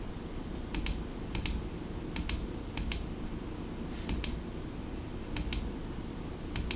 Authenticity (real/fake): real